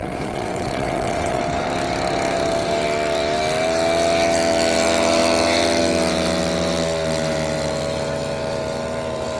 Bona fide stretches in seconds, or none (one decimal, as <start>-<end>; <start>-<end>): 1.4-9.4